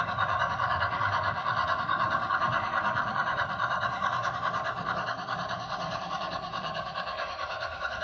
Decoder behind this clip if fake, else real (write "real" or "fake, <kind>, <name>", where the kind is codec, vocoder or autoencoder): fake, codec, DAC